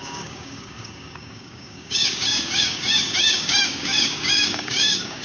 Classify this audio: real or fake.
fake